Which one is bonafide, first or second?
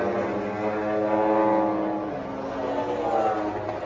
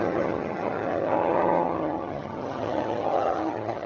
first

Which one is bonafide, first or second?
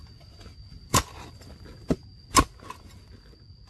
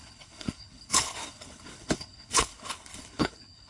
first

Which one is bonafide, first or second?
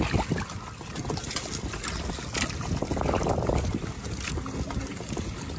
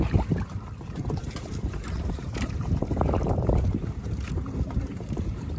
first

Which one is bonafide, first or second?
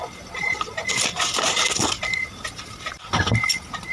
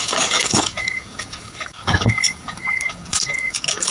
first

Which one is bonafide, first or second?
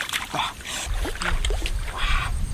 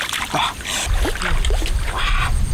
second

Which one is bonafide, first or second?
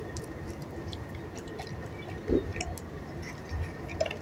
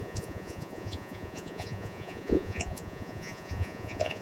first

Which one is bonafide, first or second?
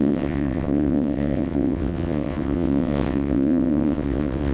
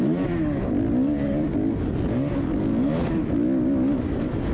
second